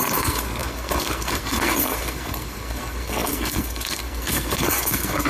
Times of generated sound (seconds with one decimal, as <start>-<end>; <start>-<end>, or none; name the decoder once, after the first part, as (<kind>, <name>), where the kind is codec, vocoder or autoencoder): 0.0-5.3 (codec, SNAC)